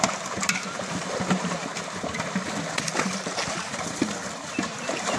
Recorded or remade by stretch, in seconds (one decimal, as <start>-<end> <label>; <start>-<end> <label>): 0.0-1.7 remade; 1.7-3.0 recorded; 3.0-5.2 remade